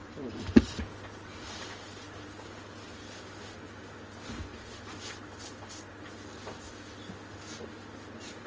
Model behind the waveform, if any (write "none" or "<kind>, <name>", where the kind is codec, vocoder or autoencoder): none